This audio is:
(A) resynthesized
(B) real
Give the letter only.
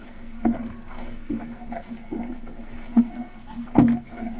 A